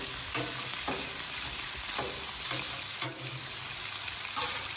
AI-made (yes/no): no